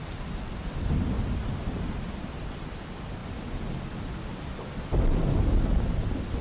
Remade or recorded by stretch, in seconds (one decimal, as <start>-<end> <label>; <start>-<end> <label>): 0.0-6.4 recorded